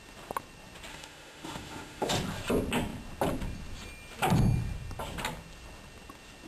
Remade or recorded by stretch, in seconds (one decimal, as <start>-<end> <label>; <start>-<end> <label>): 0.0-0.9 recorded; 0.9-2.1 remade; 2.1-6.5 recorded